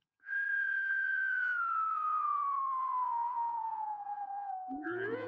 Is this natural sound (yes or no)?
no